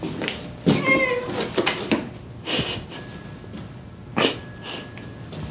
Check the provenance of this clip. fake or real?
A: real